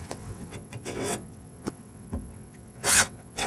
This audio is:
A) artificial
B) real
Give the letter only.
A